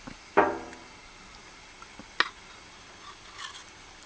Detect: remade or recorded recorded